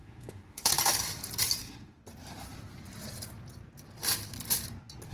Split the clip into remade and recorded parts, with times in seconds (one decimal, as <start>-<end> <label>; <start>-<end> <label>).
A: 0.0-0.7 remade; 0.7-1.6 recorded; 1.6-2.0 remade; 2.0-5.1 recorded